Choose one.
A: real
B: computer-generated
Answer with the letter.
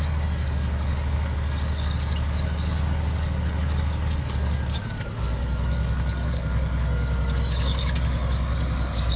B